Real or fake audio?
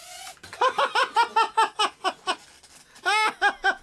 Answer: real